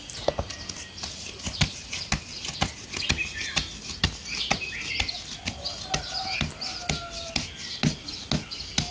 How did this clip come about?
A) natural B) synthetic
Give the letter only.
A